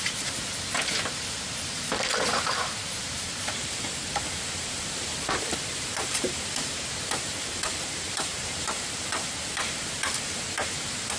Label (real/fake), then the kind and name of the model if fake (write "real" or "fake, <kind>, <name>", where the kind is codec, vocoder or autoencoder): fake, vocoder, BigVGAN v2